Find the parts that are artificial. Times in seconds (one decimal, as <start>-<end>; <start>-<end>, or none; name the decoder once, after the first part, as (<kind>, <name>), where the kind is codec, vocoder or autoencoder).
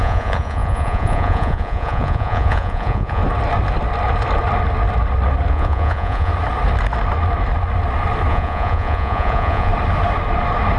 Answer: 0.0-3.2 (vocoder, Vocos); 5.5-6.3; 8.3-9.7